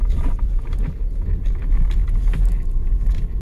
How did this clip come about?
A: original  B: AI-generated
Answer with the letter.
A